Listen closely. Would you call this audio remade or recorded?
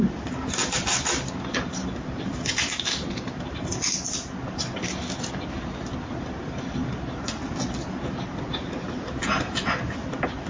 recorded